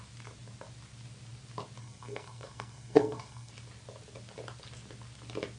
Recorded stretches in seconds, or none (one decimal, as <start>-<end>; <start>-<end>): 0.0-1.8; 3.5-5.6